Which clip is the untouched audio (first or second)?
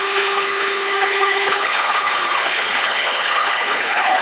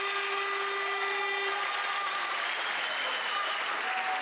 second